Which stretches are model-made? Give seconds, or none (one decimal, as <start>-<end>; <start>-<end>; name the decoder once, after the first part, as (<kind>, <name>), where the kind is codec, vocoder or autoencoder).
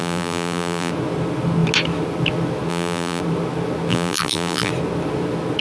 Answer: 0.0-0.9 (vocoder, BigVGAN v2); 2.7-3.2; 3.9-4.7